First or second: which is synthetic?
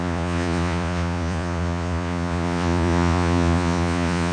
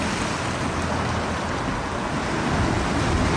first